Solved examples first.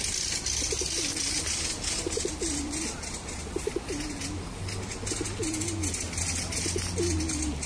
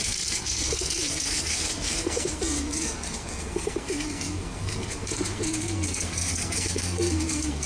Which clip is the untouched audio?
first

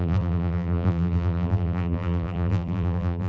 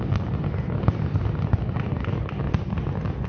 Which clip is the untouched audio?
second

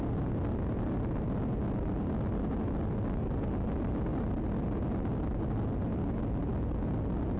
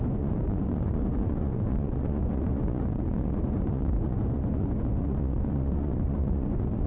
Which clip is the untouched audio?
first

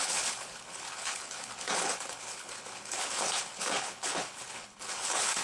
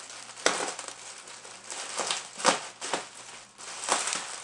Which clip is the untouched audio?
second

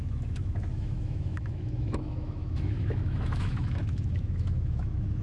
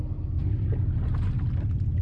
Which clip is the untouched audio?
second